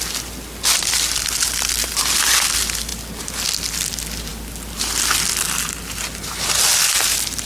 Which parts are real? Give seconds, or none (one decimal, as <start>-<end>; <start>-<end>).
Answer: 0.0-7.5